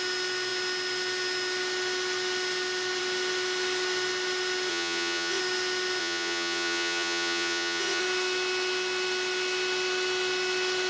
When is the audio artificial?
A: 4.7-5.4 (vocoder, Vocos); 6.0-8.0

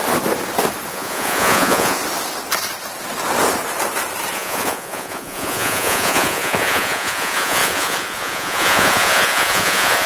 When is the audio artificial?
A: 0.9-2.0 (vocoder, Vocos); 4.3-10.1

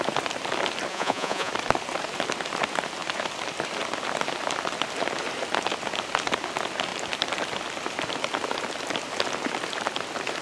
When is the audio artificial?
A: 0.9-1.5 (vocoder, Vocos)

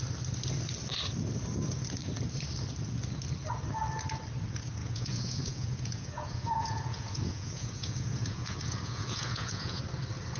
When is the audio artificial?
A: 4.8-9.8 (vocoder, Vocos)

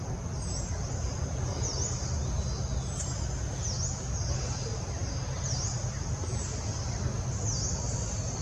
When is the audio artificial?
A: none